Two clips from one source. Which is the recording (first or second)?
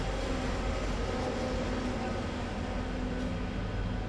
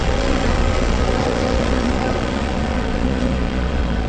first